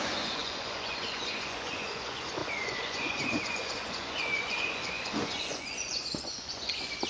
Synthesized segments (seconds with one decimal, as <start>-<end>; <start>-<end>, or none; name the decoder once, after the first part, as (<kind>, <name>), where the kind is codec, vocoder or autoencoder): 0.0-7.1 (vocoder, Vocos)